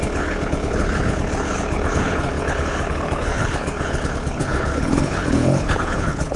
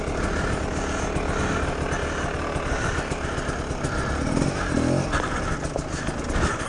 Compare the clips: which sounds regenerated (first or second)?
first